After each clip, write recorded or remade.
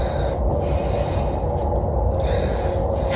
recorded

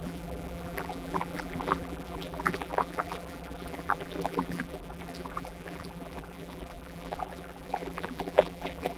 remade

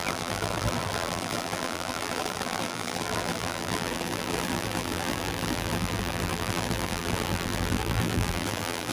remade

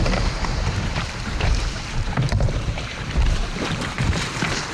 remade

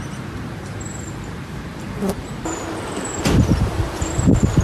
remade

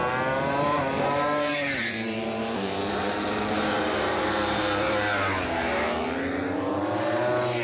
remade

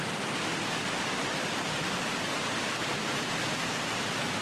recorded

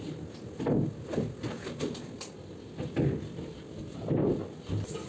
recorded